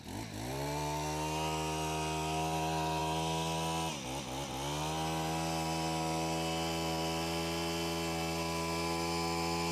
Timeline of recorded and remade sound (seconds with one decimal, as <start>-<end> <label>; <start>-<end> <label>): 0.0-9.7 recorded